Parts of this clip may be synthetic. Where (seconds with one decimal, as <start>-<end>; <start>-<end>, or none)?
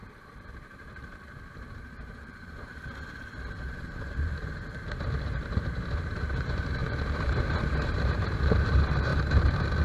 0.0-2.7; 3.7-9.8